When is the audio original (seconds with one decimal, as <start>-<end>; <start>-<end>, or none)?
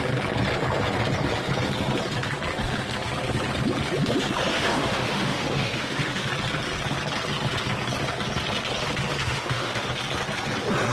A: 0.0-4.5; 6.3-9.2; 9.9-10.9